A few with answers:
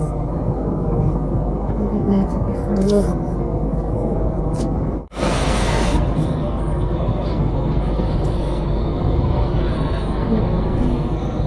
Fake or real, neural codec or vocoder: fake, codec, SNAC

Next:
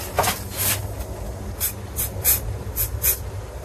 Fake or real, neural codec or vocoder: real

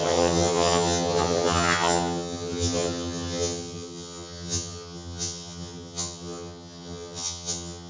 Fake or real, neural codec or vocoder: fake, vocoder, HiFi-GAN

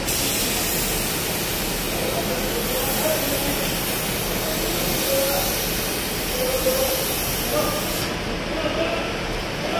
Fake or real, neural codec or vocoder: real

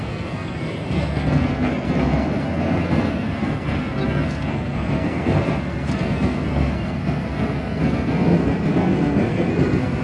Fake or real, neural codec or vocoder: fake, codec, SNAC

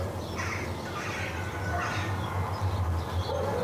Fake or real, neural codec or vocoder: real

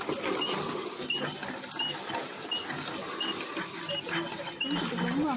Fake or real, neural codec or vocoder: real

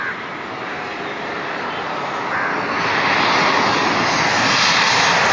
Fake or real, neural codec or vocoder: real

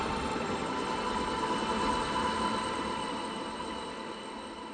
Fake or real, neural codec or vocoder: real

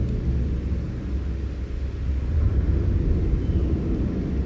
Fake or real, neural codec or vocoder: real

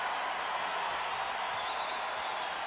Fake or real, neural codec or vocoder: real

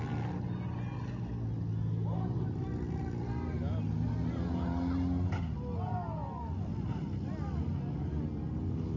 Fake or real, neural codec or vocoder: real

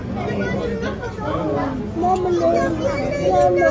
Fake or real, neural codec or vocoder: real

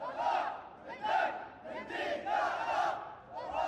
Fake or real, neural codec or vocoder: real